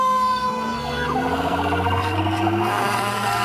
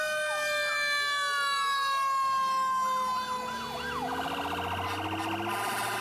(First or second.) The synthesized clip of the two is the first